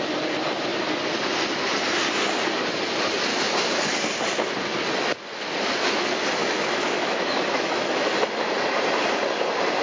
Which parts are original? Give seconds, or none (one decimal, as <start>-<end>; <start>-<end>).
0.0-3.3; 3.8-6.4; 8.1-9.8